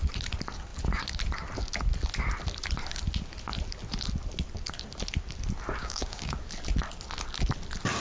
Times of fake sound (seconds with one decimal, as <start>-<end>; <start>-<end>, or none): 5.8-6.3